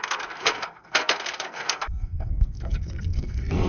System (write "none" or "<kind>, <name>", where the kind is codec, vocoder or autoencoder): codec, SNAC